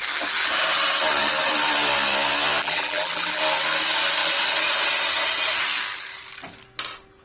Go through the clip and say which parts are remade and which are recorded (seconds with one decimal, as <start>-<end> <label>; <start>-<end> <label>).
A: 0.0-2.6 recorded; 2.6-3.4 remade; 3.4-7.2 recorded